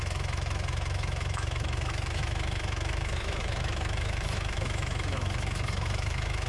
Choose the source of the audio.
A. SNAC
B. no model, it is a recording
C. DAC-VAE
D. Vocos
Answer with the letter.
C